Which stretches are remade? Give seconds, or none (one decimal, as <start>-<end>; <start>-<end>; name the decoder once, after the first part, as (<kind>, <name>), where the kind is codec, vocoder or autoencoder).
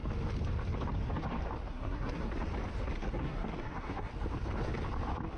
1.7-2.3 (codec, SNAC); 3.0-4.1